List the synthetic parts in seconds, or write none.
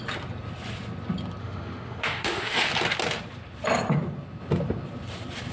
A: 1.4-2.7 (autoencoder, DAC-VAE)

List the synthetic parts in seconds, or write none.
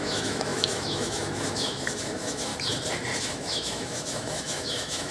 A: 0.0-2.5 (autoencoder, DAC-VAE); 3.2-5.1